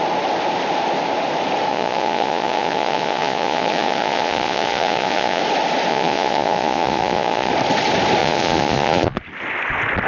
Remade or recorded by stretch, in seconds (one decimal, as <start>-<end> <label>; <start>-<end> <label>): 0.0-1.7 recorded; 1.7-5.4 remade; 5.4-5.9 recorded; 5.9-7.5 remade; 7.5-8.2 recorded; 8.2-9.2 remade; 9.2-10.1 recorded